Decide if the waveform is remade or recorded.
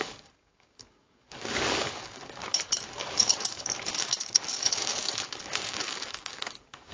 remade